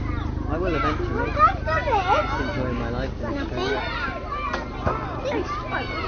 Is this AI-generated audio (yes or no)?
no